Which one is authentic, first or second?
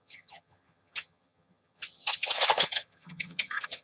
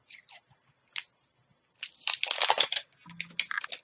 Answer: second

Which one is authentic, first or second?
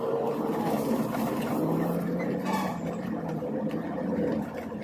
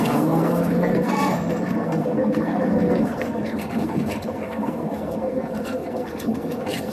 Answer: first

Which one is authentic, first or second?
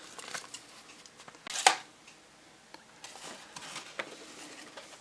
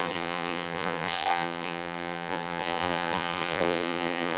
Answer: first